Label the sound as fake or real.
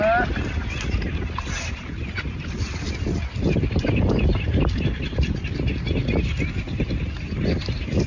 real